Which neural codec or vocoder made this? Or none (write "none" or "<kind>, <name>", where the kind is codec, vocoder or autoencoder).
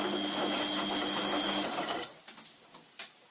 none